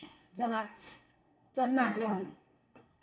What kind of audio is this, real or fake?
fake